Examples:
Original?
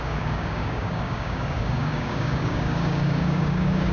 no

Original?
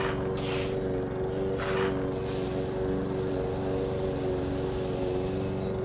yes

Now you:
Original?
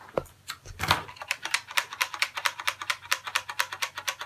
yes